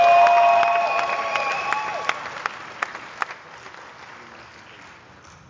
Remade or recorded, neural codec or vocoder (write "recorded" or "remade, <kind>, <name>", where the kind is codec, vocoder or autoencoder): recorded